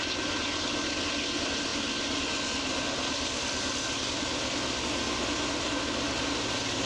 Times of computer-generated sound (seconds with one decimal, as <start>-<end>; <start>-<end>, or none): none

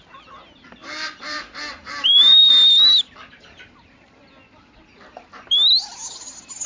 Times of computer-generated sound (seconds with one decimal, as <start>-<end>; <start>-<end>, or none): 0.8-2.5

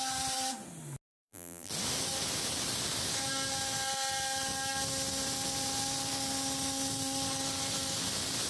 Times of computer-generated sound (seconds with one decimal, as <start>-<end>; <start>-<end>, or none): 1.1-1.7

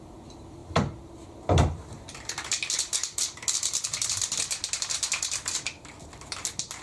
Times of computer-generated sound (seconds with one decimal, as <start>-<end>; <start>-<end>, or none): 0.6-2.3; 3.0-6.0

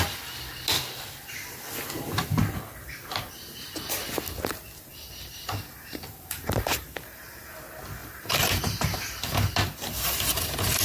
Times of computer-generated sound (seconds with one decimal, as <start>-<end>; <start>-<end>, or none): 4.9-7.6; 8.0-9.3

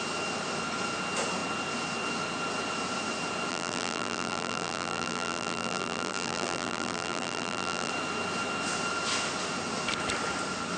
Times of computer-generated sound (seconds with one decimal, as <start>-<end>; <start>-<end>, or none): 3.5-7.9